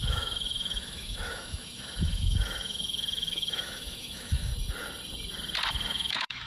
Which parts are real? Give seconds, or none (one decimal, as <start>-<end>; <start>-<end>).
4.5-5.7